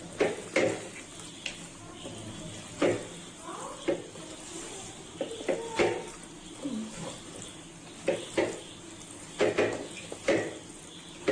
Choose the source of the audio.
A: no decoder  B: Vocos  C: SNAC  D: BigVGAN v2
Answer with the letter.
A